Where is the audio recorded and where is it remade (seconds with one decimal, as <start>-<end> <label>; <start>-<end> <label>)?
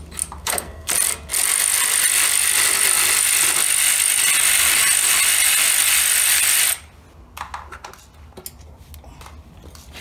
0.0-0.4 recorded; 0.4-0.9 remade; 0.9-10.0 recorded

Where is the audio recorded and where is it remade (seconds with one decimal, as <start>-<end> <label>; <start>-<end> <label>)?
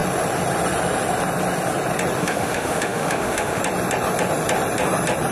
0.0-2.2 recorded; 2.2-3.6 remade; 3.6-5.3 recorded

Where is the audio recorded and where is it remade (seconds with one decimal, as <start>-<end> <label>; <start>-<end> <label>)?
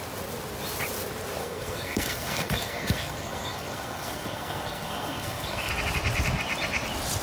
0.0-1.4 recorded; 1.4-5.7 remade; 5.7-7.2 recorded